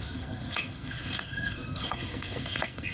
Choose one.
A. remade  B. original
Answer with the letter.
A